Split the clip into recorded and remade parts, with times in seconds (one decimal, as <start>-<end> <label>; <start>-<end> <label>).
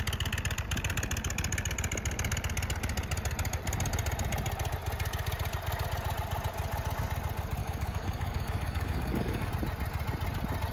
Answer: 0.0-7.6 recorded; 7.6-9.5 remade; 9.5-10.7 recorded